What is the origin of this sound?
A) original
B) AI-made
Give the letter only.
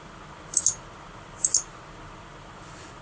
A